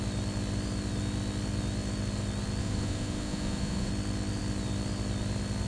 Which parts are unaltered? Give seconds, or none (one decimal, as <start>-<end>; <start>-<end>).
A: 0.0-2.6; 3.9-5.7